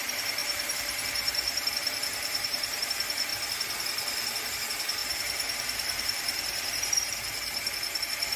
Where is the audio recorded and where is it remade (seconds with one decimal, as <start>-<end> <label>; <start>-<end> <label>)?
0.0-0.4 recorded; 0.4-2.9 remade; 2.9-5.0 recorded; 5.0-8.0 remade; 8.0-8.4 recorded